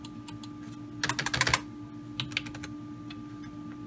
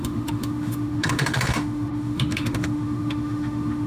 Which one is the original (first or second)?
first